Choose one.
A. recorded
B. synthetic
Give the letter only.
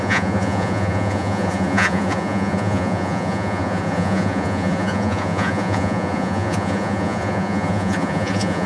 B